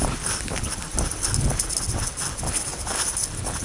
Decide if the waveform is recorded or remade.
recorded